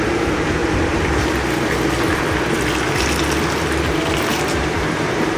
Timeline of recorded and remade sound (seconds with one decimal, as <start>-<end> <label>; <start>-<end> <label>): 0.0-4.3 recorded; 4.3-5.4 remade